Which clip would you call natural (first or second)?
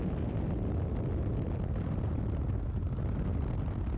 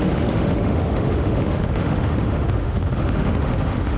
first